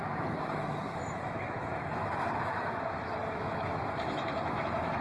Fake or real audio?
fake